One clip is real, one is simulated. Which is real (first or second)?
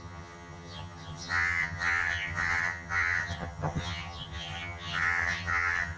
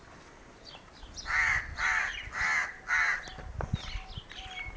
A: second